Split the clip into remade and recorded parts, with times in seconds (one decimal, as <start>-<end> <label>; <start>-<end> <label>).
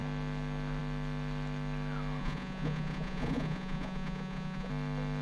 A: 0.0-2.2 recorded; 2.2-4.7 remade; 4.7-5.2 recorded